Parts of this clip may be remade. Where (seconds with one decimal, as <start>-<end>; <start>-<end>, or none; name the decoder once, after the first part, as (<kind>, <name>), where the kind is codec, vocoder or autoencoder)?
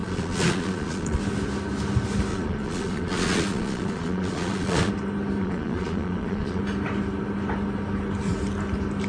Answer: 0.0-1.2 (vocoder, Vocos); 2.3-4.9; 5.4-6.6